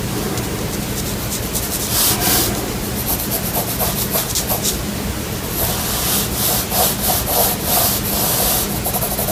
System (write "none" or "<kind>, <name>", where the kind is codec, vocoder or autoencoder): none